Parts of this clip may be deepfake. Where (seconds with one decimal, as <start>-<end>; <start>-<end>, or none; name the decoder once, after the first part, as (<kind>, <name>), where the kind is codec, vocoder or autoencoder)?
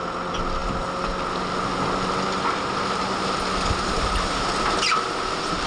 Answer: none